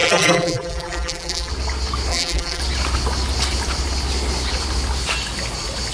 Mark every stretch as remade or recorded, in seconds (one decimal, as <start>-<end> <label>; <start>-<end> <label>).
0.0-1.5 remade; 1.5-2.1 recorded; 2.1-2.6 remade; 2.6-5.9 recorded